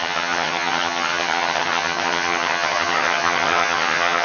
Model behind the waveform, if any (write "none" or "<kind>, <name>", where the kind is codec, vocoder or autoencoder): vocoder, HiFi-GAN